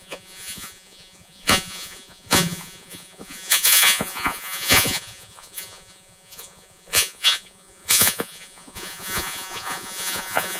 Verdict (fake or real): fake